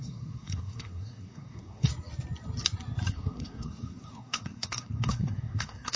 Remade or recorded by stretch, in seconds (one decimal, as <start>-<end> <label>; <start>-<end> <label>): 0.0-1.9 remade; 1.9-3.1 recorded; 3.1-6.0 remade